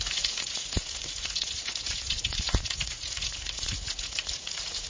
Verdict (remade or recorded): remade